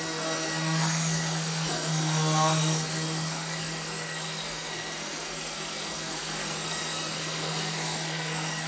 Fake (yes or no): yes